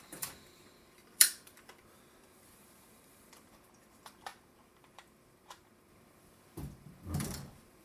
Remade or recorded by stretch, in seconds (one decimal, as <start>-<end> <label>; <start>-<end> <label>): 0.0-7.8 remade